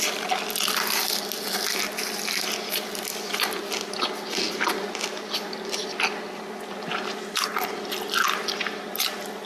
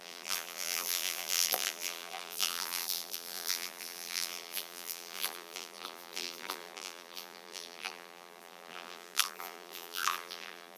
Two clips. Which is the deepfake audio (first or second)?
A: second